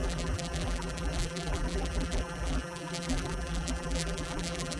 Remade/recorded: remade